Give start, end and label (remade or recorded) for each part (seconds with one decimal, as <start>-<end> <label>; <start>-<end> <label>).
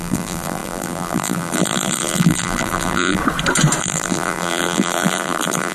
0.0-3.2 remade; 3.2-3.8 recorded; 3.8-5.7 remade